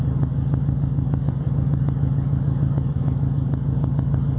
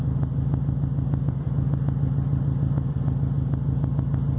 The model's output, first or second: first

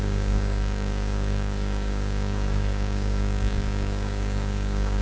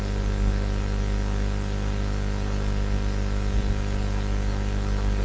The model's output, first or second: first